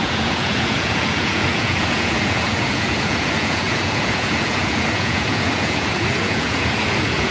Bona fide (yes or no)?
no